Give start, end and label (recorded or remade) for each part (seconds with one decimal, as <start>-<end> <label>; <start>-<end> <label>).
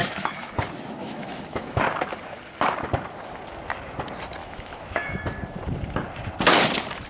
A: 0.0-0.5 remade; 0.5-1.0 recorded; 1.0-1.8 remade; 1.8-4.4 recorded; 4.4-5.2 remade; 5.2-7.1 recorded